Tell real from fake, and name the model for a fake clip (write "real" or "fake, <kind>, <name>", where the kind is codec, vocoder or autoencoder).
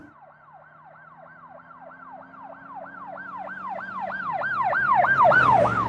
real